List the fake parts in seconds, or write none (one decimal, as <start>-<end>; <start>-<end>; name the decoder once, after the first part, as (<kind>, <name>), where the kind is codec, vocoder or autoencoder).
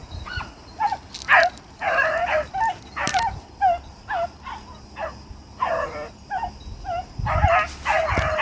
0.0-0.8 (vocoder, Vocos)